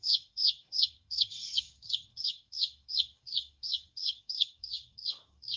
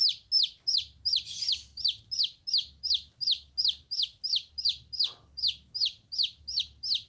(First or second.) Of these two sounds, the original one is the second